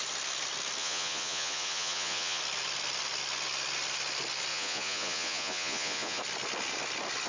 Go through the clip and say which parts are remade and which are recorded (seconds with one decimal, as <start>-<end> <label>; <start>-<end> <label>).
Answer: 0.0-0.8 recorded; 0.8-2.4 remade; 2.4-4.5 recorded; 4.5-6.2 remade; 6.2-7.3 recorded